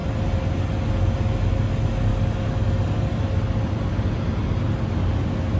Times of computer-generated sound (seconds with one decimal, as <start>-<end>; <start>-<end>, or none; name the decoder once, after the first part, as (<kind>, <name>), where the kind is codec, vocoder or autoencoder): none